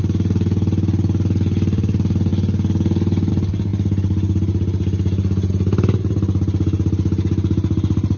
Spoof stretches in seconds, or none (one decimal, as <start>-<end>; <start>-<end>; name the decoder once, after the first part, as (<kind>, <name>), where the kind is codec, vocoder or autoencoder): none